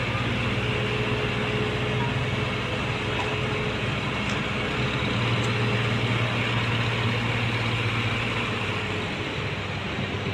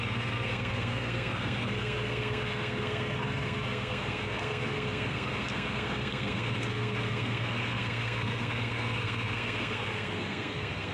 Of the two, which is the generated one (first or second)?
second